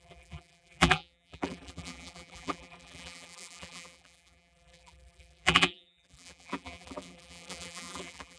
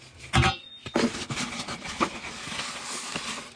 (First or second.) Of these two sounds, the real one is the second